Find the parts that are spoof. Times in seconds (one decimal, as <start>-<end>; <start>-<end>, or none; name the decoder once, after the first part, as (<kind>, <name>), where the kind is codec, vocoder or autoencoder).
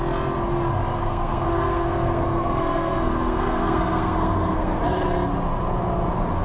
1.0-4.8 (codec, SNAC)